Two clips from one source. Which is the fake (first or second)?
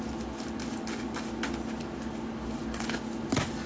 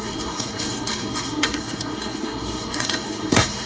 second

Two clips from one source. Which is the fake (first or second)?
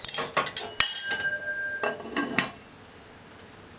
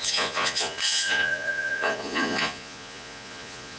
second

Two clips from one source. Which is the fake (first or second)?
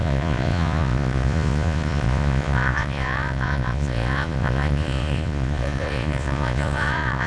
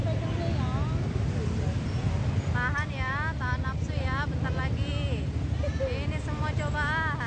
first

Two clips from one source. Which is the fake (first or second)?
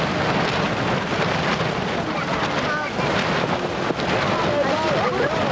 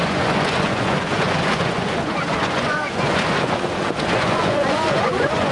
second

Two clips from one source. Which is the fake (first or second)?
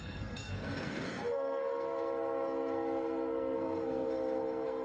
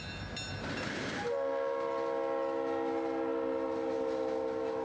first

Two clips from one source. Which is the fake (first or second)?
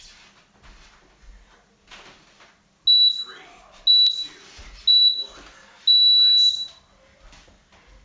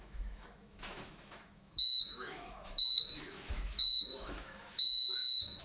second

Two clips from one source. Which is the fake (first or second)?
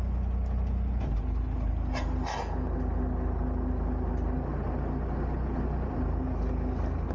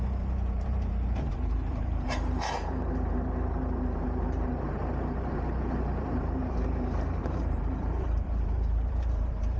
second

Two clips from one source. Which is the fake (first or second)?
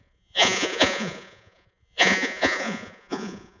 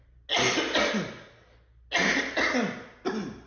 first